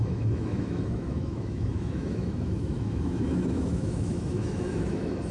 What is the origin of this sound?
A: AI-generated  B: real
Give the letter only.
A